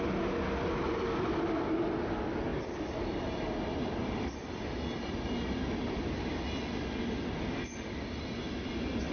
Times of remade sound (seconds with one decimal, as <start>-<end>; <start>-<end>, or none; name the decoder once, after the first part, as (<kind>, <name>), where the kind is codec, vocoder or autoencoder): none